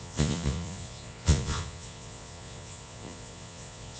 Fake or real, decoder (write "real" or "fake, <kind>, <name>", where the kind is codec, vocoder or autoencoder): fake, vocoder, Vocos